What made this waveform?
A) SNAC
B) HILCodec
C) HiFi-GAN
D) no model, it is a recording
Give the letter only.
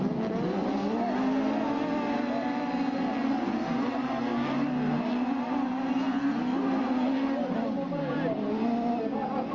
D